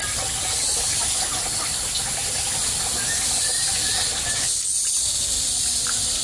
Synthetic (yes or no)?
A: no